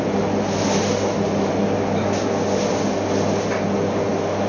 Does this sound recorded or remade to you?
recorded